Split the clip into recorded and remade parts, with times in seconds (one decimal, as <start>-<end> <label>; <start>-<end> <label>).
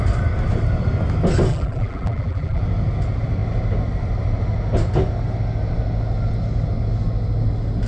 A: 0.0-1.5 recorded; 1.5-2.6 remade; 2.6-7.9 recorded